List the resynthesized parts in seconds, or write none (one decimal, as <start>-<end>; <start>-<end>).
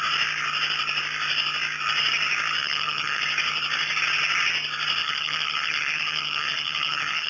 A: 2.6-3.2; 5.0-7.3